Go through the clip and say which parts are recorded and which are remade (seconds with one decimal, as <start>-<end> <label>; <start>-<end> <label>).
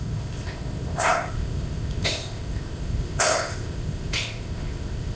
0.0-5.2 remade